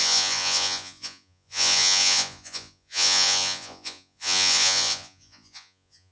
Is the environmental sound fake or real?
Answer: fake